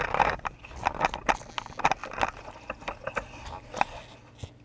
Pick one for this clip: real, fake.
real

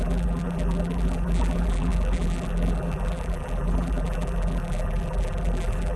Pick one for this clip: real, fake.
fake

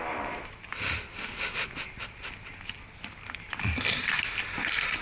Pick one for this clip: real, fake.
fake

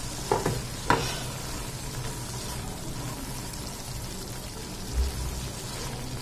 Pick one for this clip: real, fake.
real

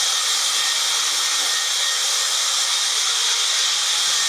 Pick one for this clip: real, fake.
real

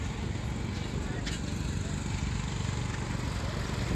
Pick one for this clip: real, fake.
real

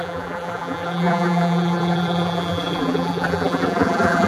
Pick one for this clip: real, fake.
fake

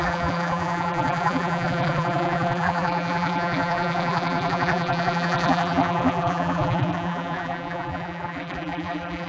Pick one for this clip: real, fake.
fake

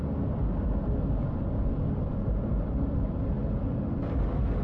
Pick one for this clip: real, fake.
real